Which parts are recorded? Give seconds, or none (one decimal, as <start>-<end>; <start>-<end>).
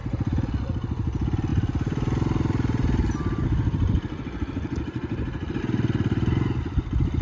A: 0.0-7.2